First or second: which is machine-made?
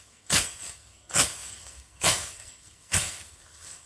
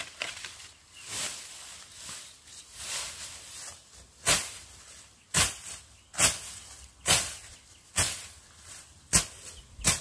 first